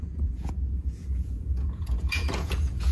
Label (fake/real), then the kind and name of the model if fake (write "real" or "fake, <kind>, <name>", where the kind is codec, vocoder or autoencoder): fake, vocoder, Vocos